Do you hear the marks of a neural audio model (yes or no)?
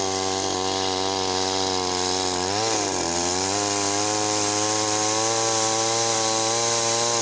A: no